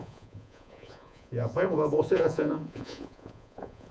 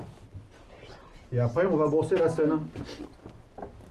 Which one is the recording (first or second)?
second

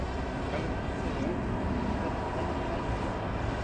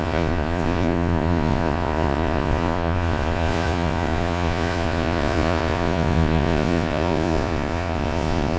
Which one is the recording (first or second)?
first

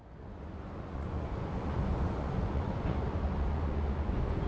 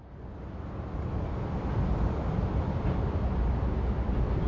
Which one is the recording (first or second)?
second